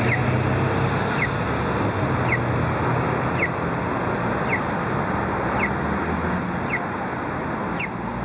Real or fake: real